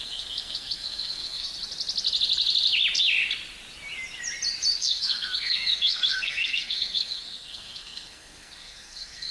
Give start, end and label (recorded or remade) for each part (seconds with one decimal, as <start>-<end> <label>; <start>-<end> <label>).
0.0-1.5 remade; 1.5-4.8 recorded; 4.8-9.3 remade